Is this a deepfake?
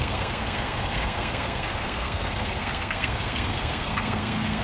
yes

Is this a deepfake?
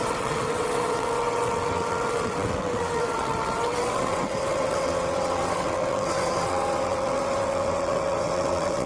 yes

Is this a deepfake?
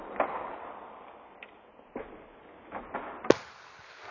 no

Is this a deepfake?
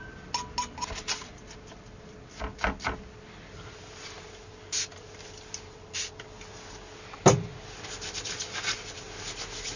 no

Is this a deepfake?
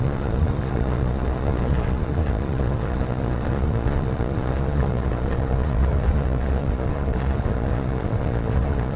yes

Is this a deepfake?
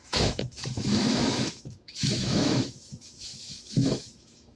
yes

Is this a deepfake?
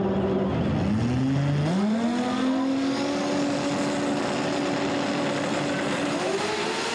no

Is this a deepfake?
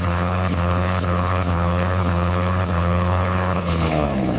yes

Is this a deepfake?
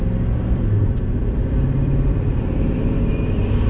yes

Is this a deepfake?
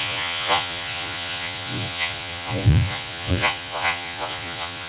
yes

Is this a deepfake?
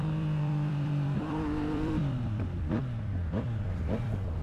yes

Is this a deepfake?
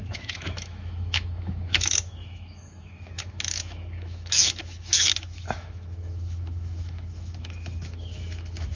yes